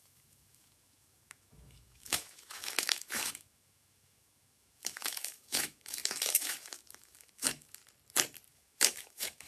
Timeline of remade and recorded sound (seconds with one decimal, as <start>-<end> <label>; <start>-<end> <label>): 0.0-7.8 remade; 7.8-8.5 recorded; 8.5-9.5 remade